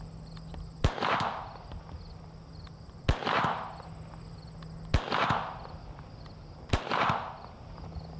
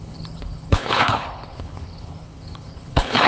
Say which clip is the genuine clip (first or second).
first